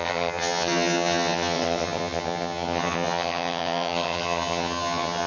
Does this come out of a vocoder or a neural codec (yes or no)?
yes